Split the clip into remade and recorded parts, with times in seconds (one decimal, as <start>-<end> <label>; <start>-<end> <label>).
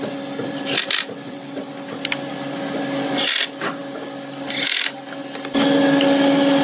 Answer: 0.0-6.6 recorded